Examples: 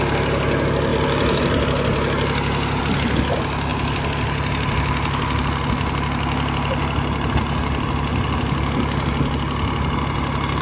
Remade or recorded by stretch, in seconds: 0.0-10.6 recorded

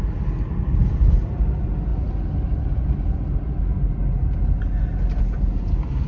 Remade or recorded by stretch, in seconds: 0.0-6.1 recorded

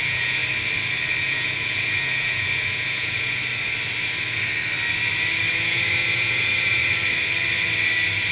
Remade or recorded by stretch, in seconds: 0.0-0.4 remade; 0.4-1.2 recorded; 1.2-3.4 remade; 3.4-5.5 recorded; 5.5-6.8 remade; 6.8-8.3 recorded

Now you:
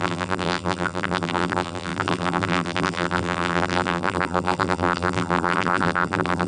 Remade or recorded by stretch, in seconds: 0.0-6.5 remade